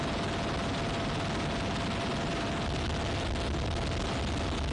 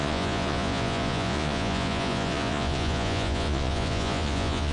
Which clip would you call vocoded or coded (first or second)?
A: second